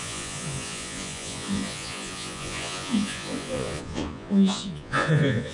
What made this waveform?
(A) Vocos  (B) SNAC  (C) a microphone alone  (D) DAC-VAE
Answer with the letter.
A